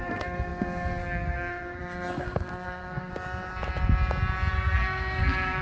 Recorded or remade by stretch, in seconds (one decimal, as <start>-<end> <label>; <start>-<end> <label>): 0.0-3.1 remade; 3.1-4.5 recorded; 4.5-5.6 remade